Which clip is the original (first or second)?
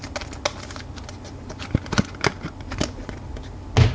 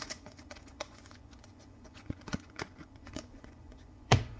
first